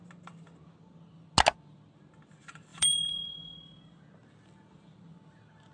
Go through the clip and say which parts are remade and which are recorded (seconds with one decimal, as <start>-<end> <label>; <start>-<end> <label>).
0.0-2.7 recorded; 2.7-3.3 remade; 3.3-5.7 recorded